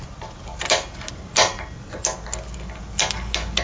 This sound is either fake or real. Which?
real